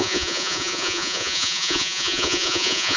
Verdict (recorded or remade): remade